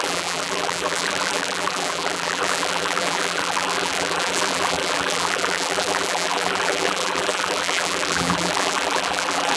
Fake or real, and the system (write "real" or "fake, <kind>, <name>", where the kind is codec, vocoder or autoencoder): fake, vocoder, BigVGAN v2